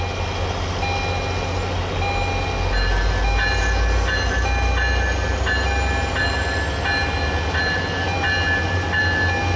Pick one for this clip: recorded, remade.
recorded